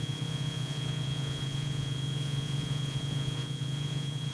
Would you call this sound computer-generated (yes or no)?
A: yes